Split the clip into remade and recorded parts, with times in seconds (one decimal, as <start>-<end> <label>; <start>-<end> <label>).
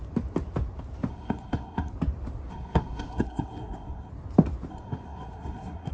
0.0-1.1 recorded; 1.1-1.9 remade; 1.9-2.5 recorded; 2.5-4.1 remade; 4.1-4.7 recorded; 4.7-5.9 remade